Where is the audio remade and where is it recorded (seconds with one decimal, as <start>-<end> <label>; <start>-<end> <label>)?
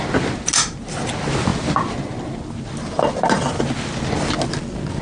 0.0-5.0 recorded